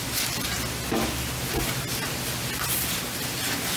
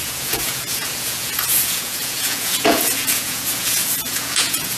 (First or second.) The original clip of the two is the first